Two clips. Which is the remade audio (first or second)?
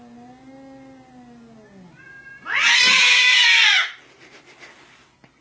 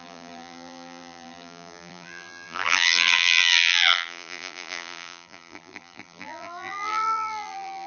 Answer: second